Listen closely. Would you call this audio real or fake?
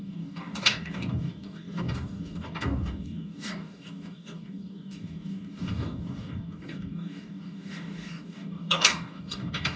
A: fake